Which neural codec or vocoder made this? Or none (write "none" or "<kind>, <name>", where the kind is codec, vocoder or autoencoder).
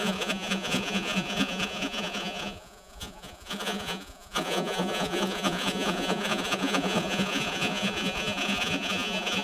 vocoder, Vocos